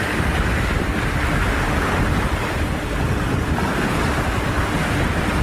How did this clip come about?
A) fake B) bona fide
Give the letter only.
B